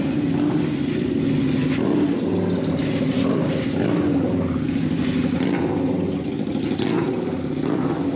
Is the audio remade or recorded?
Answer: recorded